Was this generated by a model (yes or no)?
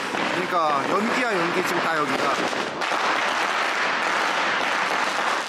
no